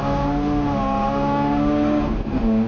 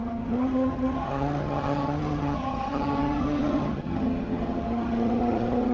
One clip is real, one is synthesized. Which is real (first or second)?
first